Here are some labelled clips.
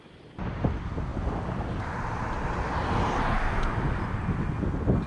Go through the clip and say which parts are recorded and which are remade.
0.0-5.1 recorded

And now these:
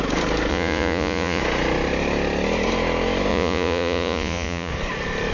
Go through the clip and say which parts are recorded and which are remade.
0.0-0.5 recorded; 0.5-1.4 remade; 1.4-3.3 recorded; 3.3-4.7 remade; 4.7-5.3 recorded

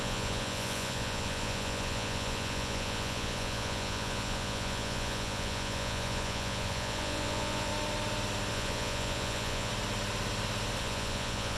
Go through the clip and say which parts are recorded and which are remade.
0.0-7.7 remade; 7.7-8.5 recorded; 8.5-9.7 remade; 9.7-10.8 recorded; 10.8-11.6 remade

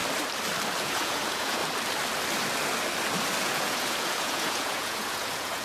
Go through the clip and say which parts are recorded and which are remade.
0.0-0.8 recorded; 0.8-1.6 remade; 1.6-3.4 recorded; 3.4-5.6 remade

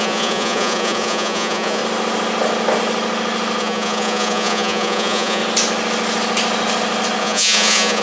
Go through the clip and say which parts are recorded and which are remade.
0.0-1.8 remade; 1.8-3.6 recorded; 3.6-5.4 remade; 5.4-7.2 recorded; 7.2-8.0 remade

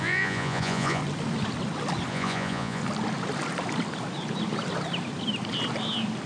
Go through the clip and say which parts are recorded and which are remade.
0.0-1.0 remade; 1.0-2.1 recorded; 2.1-2.8 remade; 2.8-6.3 recorded

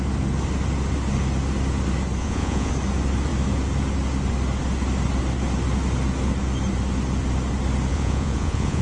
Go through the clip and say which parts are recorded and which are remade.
0.0-2.2 recorded; 2.2-2.7 remade; 2.7-7.9 recorded; 7.9-8.8 remade

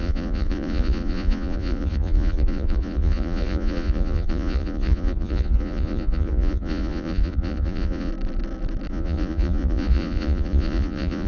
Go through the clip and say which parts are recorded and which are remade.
0.0-8.1 remade; 8.1-8.9 recorded; 8.9-11.3 remade